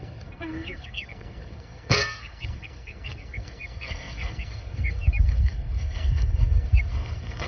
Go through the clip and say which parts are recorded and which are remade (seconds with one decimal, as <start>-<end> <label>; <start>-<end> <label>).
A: 0.0-7.5 remade

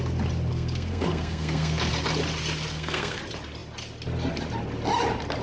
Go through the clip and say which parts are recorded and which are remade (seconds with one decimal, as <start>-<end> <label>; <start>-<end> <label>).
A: 0.0-0.5 recorded; 0.5-1.9 remade; 1.9-2.7 recorded; 2.7-3.2 remade; 3.2-5.4 recorded